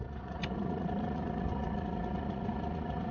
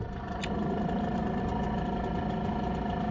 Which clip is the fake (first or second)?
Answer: first